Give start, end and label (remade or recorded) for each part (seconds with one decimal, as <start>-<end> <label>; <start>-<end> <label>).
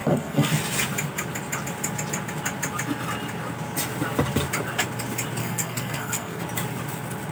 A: 0.0-0.6 remade; 0.6-5.4 recorded; 5.4-6.4 remade; 6.4-7.3 recorded